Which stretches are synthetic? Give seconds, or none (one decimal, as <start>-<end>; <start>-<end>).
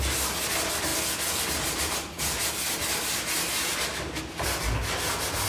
none